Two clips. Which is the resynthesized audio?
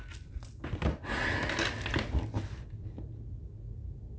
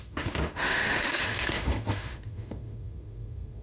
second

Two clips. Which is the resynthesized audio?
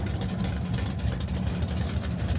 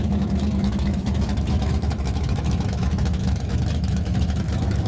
second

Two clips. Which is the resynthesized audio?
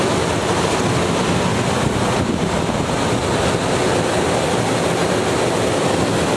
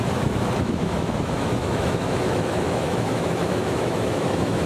second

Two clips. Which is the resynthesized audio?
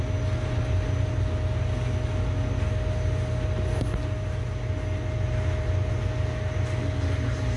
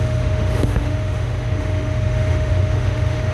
second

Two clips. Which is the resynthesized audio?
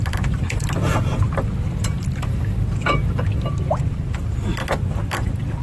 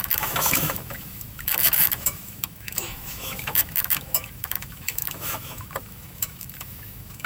second